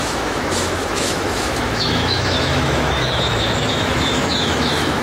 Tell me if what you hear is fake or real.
fake